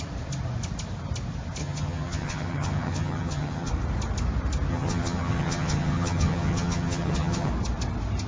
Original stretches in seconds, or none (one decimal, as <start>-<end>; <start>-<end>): 0.0-1.6; 3.7-4.7; 7.5-8.3